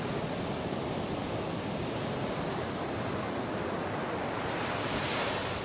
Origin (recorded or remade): recorded